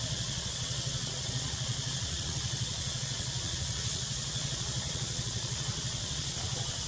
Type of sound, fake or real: fake